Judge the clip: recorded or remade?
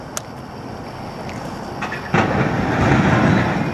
recorded